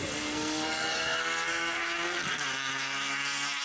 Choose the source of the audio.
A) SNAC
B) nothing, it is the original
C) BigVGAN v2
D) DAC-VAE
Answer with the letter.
A